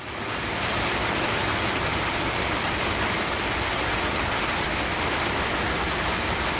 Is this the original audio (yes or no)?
no